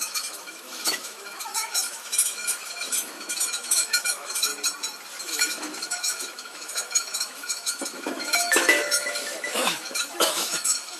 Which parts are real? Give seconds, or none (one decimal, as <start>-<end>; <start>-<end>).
4.5-5.2